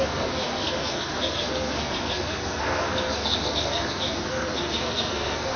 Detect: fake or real fake